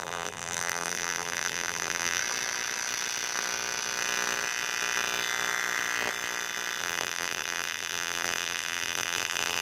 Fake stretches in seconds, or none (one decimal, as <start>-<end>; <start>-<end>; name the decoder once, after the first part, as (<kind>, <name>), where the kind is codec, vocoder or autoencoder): 0.0-2.2 (vocoder, BigVGAN v2); 6.8-9.6